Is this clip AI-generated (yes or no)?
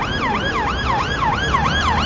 no